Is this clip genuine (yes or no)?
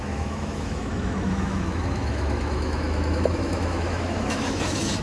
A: no